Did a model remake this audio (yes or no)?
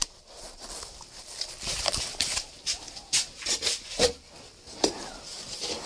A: no